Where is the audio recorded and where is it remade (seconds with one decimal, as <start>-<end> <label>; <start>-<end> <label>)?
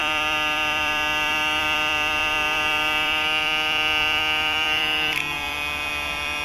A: 0.0-6.4 remade